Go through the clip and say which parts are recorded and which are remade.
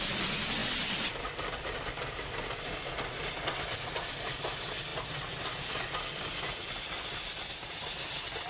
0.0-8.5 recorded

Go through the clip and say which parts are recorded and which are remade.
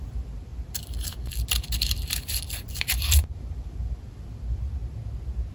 0.0-4.8 remade; 4.8-5.5 recorded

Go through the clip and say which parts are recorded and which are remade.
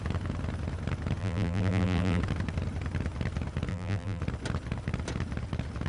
0.0-1.2 recorded; 1.2-2.2 remade; 2.2-3.7 recorded; 3.7-4.2 remade; 4.2-5.9 recorded